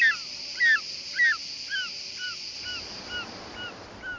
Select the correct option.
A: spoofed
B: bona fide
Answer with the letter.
B